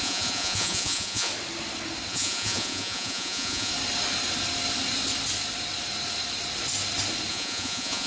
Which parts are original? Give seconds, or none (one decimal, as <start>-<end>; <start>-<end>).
1.3-2.1; 3.7-7.3